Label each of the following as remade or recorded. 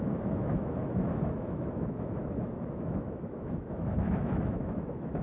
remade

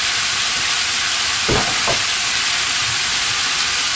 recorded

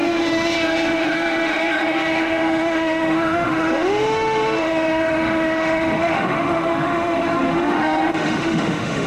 remade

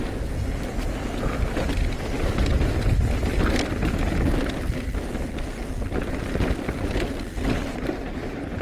recorded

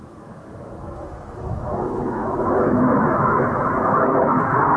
remade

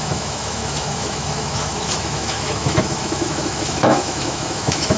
remade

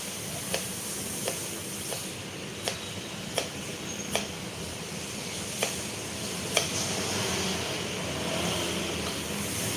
recorded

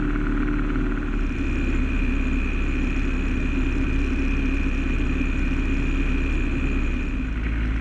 recorded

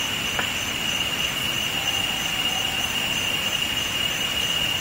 recorded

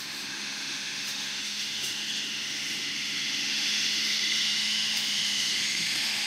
remade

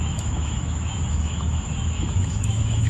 remade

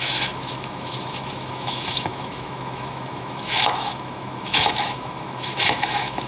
remade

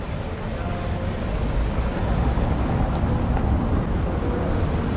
recorded